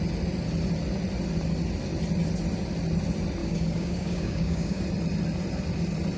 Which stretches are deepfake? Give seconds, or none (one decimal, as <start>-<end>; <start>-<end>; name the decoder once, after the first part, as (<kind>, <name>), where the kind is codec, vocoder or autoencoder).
3.4-4.8 (codec, DAC)